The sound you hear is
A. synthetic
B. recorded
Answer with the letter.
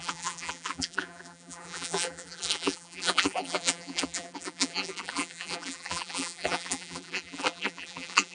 A